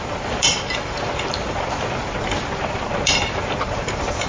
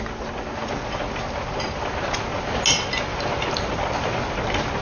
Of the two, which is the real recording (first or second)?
second